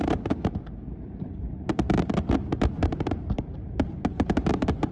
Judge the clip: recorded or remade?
remade